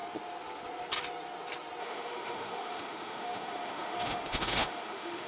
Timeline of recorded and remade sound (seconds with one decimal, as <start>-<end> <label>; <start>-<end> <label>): 0.0-1.8 recorded; 1.8-5.3 remade